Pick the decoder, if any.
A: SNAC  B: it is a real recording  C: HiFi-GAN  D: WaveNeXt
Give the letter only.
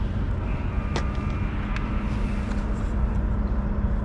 B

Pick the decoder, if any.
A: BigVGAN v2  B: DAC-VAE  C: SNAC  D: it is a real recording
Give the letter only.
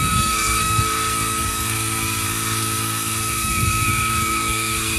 C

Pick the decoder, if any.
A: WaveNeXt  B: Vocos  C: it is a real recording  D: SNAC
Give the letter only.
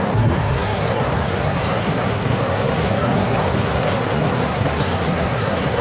D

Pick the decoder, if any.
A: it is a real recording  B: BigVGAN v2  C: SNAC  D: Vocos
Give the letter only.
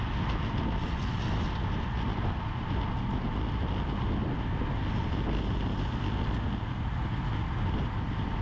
A